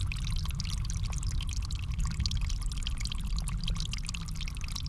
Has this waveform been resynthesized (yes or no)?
no